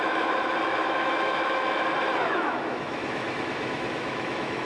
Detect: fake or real fake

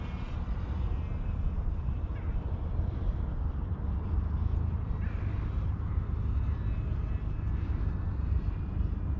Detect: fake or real real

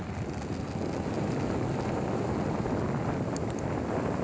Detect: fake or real real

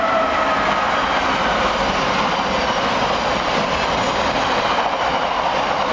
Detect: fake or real real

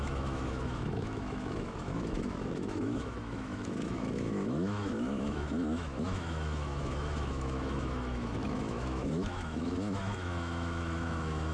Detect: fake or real fake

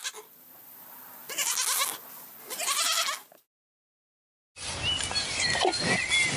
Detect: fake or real real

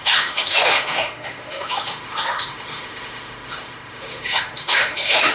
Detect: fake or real fake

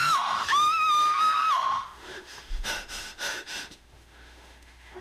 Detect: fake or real fake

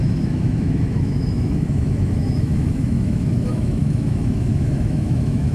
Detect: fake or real fake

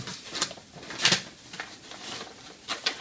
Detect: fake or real real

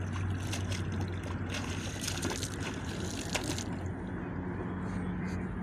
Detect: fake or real real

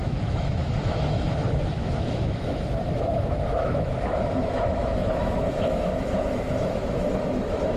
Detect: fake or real fake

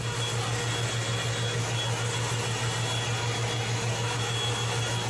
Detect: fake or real real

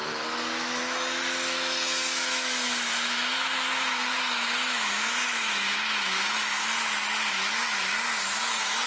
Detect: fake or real fake